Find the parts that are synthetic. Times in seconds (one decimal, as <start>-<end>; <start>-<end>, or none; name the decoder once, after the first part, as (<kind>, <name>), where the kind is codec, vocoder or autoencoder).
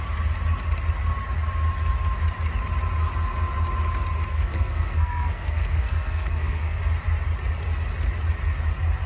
4.3-6.8 (codec, SNAC)